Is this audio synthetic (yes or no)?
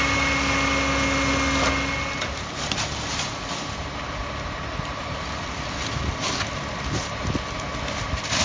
no